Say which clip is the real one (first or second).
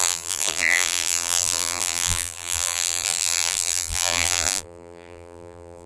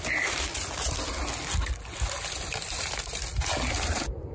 second